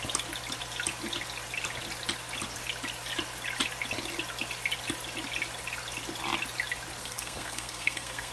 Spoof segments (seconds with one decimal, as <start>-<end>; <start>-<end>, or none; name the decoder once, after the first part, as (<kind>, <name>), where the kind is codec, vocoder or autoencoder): 7.0-8.3 (codec, SNAC)